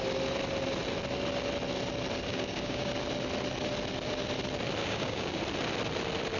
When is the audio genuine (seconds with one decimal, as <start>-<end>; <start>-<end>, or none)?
0.0-2.3; 2.9-4.8; 5.4-6.4